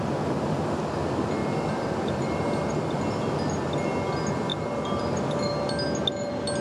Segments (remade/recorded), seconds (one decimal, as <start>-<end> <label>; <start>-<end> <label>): 0.0-1.4 recorded; 1.4-2.7 remade; 2.7-4.5 recorded; 4.5-5.3 remade; 5.3-6.6 recorded